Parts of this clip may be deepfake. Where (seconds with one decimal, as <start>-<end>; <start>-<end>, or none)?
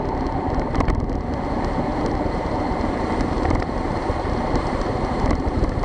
1.9-5.8